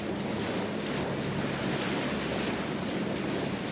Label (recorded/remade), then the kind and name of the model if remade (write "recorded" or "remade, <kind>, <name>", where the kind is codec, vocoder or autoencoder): recorded